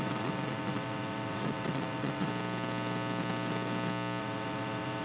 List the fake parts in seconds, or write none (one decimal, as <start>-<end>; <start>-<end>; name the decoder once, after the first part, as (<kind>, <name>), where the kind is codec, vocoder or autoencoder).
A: 0.0-2.3 (vocoder, WaveNeXt); 4.2-5.0